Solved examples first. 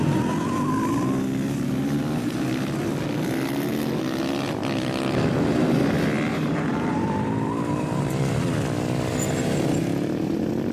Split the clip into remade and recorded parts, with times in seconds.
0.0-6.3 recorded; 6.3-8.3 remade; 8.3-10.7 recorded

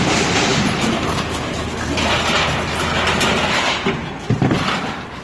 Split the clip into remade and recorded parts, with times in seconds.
0.0-5.2 recorded

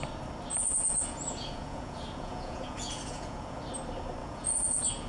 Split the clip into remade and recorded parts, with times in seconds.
0.0-0.5 recorded; 0.5-3.6 remade; 3.6-4.2 recorded; 4.2-5.1 remade